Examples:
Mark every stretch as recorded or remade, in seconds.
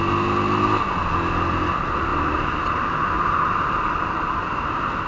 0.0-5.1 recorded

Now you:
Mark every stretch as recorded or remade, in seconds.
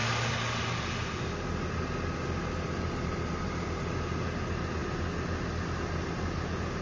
0.0-6.8 recorded